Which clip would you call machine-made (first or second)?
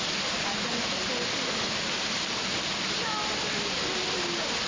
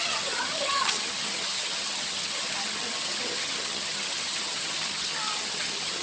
second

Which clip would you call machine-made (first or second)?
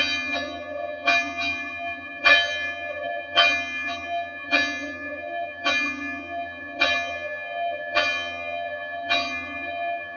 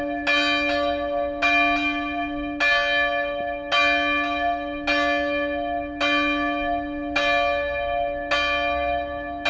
first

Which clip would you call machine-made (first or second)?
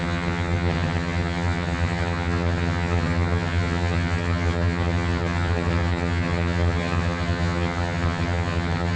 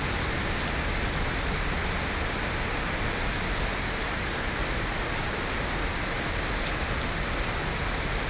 first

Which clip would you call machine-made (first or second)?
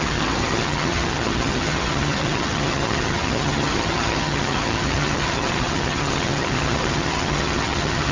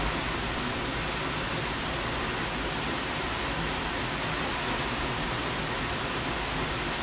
first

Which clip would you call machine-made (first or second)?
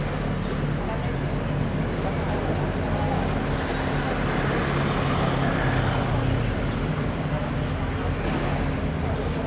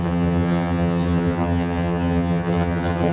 second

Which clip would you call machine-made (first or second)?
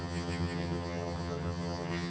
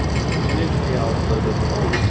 first